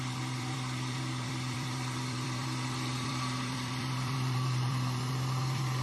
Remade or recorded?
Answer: remade